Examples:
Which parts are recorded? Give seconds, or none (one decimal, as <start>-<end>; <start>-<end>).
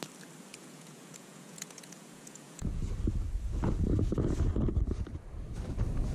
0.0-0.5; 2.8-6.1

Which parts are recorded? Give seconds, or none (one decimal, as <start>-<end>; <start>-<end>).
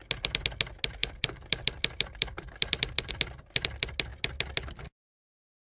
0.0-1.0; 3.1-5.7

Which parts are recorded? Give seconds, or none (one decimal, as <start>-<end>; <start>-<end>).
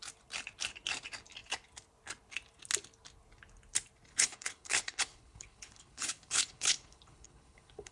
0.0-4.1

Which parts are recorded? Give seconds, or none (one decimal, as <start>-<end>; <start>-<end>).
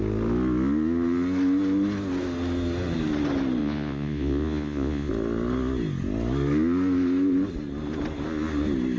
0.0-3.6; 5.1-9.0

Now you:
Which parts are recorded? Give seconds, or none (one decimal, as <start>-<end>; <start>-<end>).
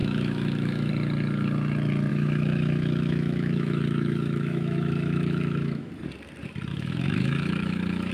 0.9-2.1; 5.9-6.7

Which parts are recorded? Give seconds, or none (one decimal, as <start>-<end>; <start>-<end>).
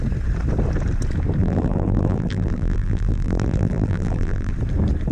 0.0-1.4; 4.5-5.1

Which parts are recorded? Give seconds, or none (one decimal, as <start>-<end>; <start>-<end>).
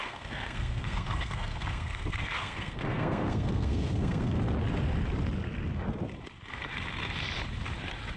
4.4-8.2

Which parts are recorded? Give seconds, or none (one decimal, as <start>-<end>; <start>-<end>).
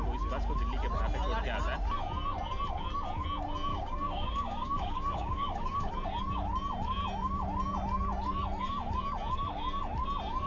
0.0-3.7; 5.9-10.5